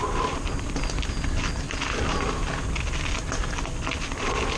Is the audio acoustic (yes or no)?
yes